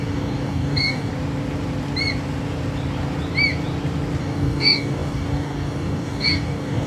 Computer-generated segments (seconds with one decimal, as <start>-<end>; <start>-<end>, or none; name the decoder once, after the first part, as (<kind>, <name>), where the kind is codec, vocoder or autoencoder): 0.0-1.1 (codec, DAC); 4.2-6.9